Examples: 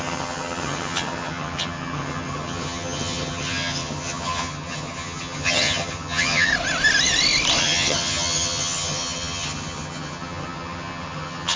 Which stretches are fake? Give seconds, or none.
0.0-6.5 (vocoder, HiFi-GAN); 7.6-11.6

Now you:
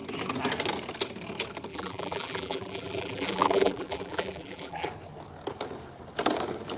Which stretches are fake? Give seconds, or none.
1.7-4.9 (vocoder, BigVGAN v2)

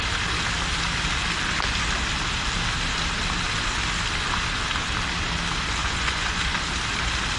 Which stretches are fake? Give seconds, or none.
5.8-6.6 (vocoder, Vocos)